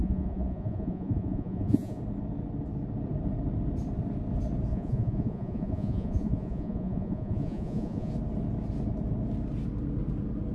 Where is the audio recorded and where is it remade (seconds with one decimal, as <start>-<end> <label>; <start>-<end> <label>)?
0.0-2.0 remade; 2.0-4.7 recorded; 4.7-8.1 remade; 8.1-10.5 recorded